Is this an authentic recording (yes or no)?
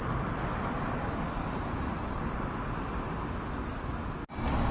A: yes